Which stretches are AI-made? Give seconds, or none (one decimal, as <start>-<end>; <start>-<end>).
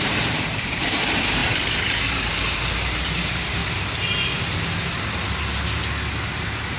0.0-3.6; 6.3-6.8